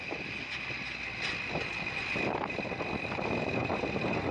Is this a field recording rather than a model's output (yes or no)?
yes